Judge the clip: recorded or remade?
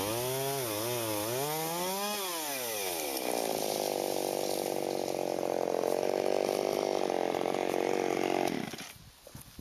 recorded